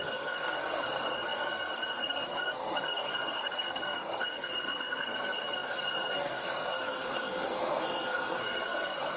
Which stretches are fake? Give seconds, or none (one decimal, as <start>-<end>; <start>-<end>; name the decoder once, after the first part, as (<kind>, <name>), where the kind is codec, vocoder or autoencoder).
0.0-9.2 (codec, SNAC)